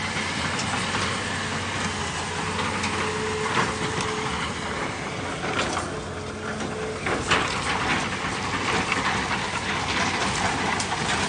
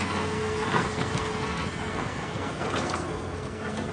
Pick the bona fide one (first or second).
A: first